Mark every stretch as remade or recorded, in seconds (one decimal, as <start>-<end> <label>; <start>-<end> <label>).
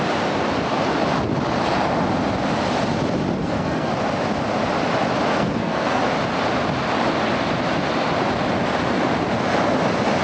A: 0.0-3.4 recorded; 3.4-3.9 remade; 3.9-5.3 recorded; 5.3-6.0 remade; 6.0-10.2 recorded